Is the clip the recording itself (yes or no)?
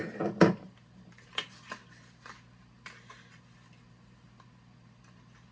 yes